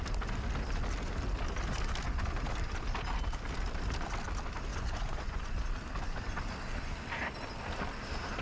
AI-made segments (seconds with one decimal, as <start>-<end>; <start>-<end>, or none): 4.7-5.4